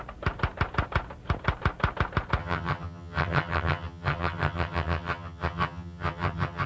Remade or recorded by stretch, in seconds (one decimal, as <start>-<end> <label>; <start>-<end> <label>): 0.0-2.4 recorded; 2.4-6.7 remade